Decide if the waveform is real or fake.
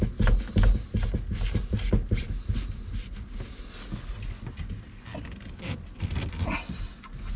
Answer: real